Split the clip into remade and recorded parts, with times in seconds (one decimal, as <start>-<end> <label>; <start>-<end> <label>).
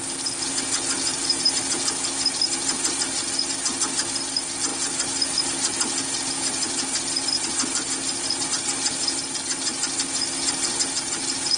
0.0-1.1 recorded; 1.1-1.6 remade; 1.6-11.6 recorded